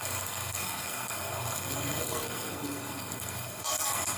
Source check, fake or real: fake